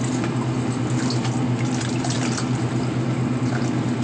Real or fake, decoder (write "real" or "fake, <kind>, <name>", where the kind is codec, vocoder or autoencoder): real